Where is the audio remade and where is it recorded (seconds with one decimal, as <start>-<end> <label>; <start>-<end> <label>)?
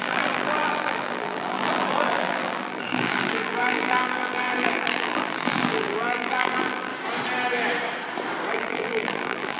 0.0-6.9 remade; 6.9-8.5 recorded; 8.5-9.6 remade